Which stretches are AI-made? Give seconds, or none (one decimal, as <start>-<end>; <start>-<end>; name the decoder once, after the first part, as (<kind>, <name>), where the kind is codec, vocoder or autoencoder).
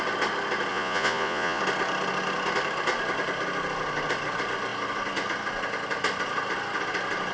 0.7-1.6 (vocoder, Vocos)